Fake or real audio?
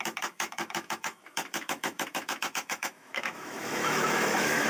fake